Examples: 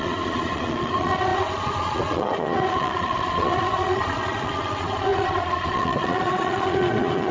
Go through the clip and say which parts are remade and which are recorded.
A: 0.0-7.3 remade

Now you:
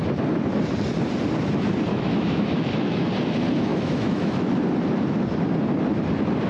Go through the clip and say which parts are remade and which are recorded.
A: 0.0-1.9 recorded; 1.9-3.1 remade; 3.1-3.7 recorded; 3.7-4.5 remade; 4.5-6.5 recorded

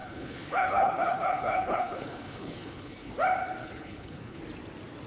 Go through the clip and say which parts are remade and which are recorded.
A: 0.0-3.1 remade; 3.1-3.6 recorded; 3.6-4.4 remade; 4.4-5.1 recorded

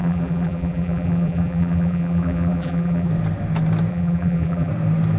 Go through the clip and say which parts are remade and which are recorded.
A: 0.0-3.1 remade; 3.1-3.9 recorded; 3.9-4.7 remade; 4.7-5.2 recorded

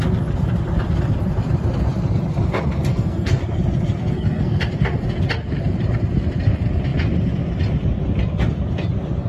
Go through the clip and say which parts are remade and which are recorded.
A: 0.0-2.9 recorded; 2.9-3.4 remade; 3.4-4.0 recorded; 4.0-4.6 remade; 4.6-9.3 recorded